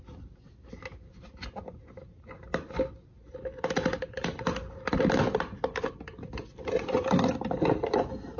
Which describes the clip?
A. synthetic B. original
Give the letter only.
B